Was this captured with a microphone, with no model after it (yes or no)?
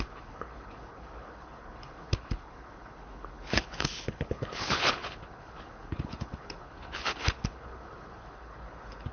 no